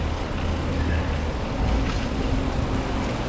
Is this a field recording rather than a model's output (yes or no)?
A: yes